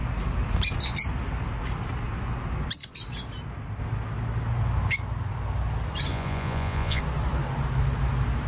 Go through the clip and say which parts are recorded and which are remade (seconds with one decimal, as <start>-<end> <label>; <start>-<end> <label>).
0.0-6.1 recorded; 6.1-7.0 remade; 7.0-8.5 recorded